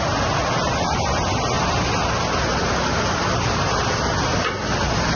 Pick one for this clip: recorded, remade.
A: recorded